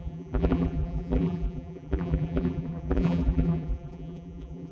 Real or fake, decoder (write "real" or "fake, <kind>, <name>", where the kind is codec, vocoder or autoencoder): fake, vocoder, BigVGAN v2